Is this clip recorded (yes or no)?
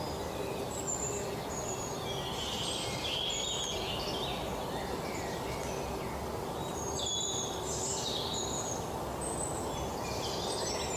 yes